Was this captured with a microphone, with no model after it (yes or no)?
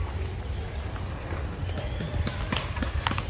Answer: yes